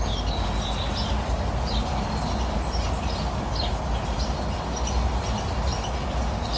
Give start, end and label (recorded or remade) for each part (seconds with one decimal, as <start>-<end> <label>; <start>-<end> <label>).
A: 0.0-6.6 recorded